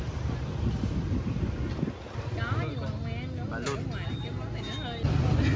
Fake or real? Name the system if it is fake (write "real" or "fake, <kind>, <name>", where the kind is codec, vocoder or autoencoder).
real